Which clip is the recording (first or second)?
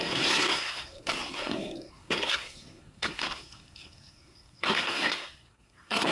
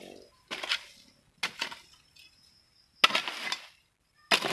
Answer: second